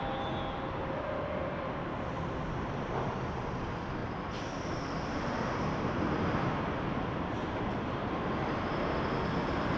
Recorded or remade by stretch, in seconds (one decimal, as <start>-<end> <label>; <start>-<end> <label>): 0.0-7.4 recorded; 7.4-8.1 remade; 8.1-9.8 recorded